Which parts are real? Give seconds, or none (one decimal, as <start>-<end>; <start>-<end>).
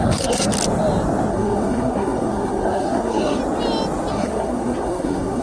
0.5-1.3; 3.4-4.1